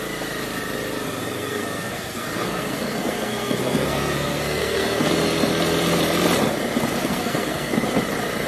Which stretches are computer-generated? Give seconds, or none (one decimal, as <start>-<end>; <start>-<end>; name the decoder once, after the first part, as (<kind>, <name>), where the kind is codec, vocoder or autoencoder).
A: 1.2-5.1 (codec, SNAC); 7.0-7.7